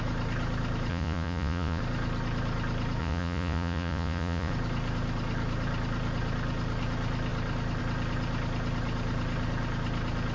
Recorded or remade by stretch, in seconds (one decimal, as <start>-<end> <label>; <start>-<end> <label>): 0.0-0.9 recorded; 0.9-1.8 remade; 1.8-3.0 recorded; 3.0-4.5 remade; 4.5-10.3 recorded